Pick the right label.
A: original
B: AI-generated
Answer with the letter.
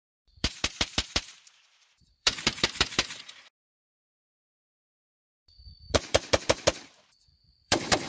B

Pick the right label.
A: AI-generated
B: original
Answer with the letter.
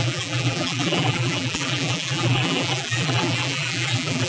A